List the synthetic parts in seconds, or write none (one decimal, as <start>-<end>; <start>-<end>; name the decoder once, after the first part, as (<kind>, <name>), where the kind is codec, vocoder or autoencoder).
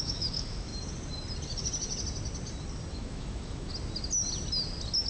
0.0-0.7 (autoencoder, DAC-VAE); 2.9-3.7